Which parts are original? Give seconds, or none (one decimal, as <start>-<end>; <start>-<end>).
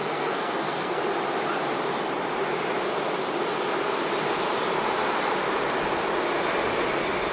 1.0-7.3